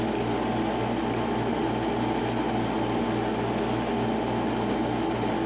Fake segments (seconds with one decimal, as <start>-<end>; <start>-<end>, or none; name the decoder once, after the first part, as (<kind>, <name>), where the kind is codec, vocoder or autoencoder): none